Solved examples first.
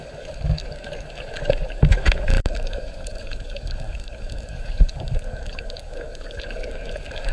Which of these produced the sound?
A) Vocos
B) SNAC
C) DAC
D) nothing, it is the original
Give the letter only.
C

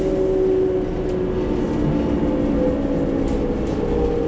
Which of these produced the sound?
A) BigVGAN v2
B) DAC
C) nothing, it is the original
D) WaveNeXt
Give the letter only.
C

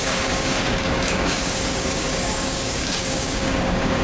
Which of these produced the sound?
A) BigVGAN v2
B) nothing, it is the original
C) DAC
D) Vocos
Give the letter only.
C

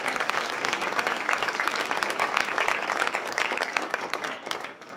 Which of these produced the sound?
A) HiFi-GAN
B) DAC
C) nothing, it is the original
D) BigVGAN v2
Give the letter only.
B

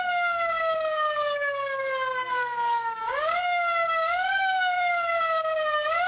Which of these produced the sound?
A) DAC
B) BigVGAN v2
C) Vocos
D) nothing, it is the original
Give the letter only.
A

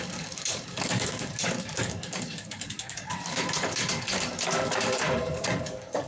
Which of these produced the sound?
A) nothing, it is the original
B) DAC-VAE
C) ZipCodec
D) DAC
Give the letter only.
D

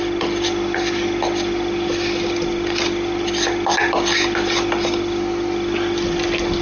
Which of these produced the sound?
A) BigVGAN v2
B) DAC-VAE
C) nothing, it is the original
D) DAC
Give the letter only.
C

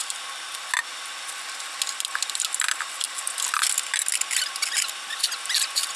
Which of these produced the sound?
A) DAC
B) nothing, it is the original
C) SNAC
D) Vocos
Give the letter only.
B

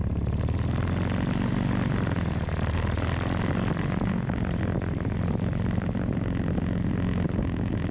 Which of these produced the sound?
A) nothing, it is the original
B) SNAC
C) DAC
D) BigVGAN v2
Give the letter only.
A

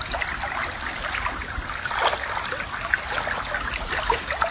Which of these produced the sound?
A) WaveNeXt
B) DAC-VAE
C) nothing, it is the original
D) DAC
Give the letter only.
C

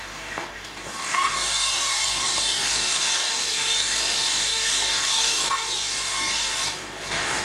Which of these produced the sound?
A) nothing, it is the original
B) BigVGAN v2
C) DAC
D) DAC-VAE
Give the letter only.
C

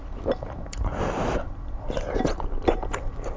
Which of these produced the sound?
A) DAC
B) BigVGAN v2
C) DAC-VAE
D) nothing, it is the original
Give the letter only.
D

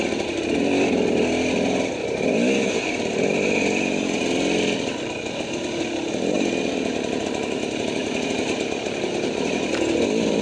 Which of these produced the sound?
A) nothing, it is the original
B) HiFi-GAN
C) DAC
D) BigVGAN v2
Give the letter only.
A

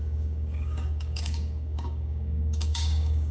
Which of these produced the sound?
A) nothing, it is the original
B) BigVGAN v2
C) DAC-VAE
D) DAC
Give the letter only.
D